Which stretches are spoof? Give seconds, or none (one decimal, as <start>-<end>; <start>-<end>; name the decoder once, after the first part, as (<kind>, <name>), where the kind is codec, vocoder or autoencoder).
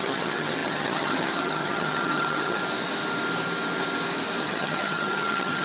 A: 0.0-2.6 (vocoder, HiFi-GAN); 4.4-5.6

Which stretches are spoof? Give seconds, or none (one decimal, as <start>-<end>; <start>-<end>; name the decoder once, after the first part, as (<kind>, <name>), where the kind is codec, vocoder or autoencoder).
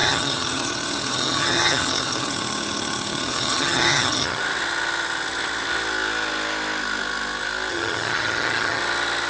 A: 0.0-4.4 (vocoder, HiFi-GAN); 7.7-8.8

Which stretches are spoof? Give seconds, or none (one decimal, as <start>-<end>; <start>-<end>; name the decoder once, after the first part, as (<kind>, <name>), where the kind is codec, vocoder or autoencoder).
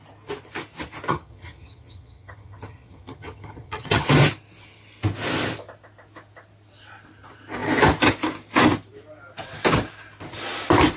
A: 1.1-4.1 (vocoder, HiFi-GAN)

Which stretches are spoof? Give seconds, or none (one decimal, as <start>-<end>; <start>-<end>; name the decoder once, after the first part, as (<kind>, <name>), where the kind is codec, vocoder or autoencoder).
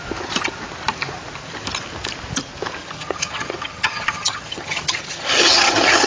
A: 2.8-6.1 (vocoder, HiFi-GAN)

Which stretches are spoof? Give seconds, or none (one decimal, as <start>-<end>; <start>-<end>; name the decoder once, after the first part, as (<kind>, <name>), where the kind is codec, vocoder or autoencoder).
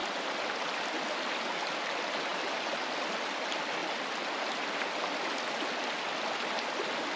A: none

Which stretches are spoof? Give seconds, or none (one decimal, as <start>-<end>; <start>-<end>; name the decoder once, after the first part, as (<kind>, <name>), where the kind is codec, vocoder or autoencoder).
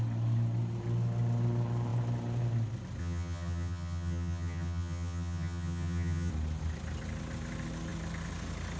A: 3.0-6.3 (vocoder, HiFi-GAN)